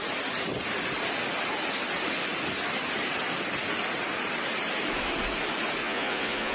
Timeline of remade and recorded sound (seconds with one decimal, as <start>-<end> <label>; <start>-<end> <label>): 0.0-5.8 recorded; 5.8-6.5 remade